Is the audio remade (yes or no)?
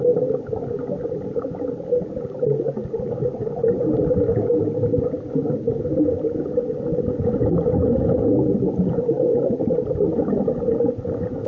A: no